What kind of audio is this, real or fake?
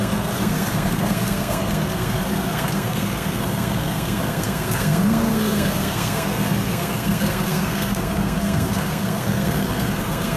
fake